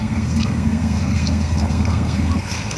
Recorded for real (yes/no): no